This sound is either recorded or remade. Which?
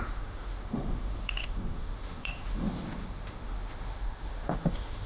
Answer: remade